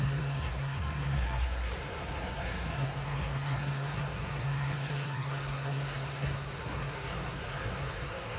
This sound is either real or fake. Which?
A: fake